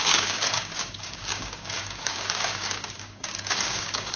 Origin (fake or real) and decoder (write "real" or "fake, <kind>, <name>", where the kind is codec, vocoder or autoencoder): fake, codec, DAC